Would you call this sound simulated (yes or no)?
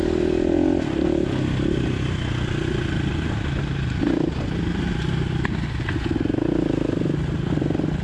no